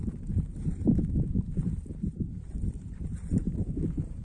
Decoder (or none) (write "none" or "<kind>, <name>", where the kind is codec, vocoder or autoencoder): vocoder, BigVGAN v2